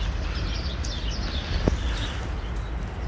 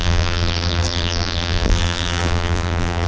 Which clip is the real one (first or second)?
first